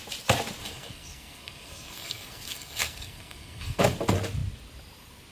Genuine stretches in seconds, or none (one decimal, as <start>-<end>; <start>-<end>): 0.0-0.6; 3.8-5.3